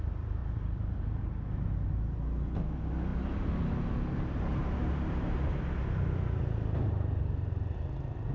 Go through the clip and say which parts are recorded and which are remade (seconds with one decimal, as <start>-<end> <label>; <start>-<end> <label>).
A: 0.0-0.4 recorded; 0.4-1.2 remade; 1.2-8.3 recorded